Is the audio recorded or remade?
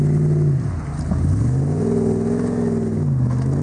recorded